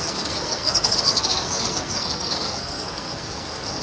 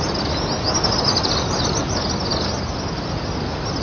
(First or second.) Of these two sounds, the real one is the second